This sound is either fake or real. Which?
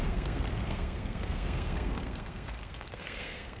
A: fake